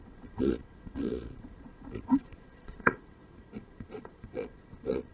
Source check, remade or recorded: remade